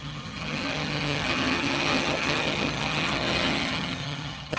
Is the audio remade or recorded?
remade